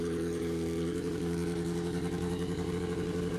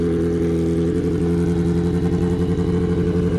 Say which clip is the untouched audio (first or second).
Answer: second